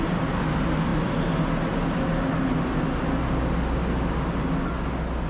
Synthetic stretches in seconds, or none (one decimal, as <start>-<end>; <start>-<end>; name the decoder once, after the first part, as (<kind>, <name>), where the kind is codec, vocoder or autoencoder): none

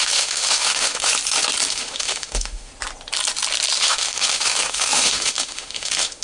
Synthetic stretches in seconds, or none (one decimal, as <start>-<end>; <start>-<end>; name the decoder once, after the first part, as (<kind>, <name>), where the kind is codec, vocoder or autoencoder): 0.0-1.1 (autoencoder, DAC-VAE); 1.7-2.7; 3.8-6.2

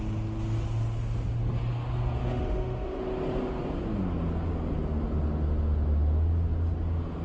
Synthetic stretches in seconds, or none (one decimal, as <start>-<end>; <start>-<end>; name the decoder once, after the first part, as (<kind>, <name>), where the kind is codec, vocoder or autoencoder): 2.2-3.0 (autoencoder, DAC-VAE)